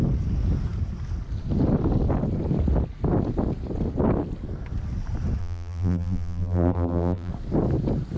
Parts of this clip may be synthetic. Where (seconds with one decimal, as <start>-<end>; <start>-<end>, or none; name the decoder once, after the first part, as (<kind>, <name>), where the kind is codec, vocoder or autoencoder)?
5.4-7.3 (vocoder, BigVGAN v2)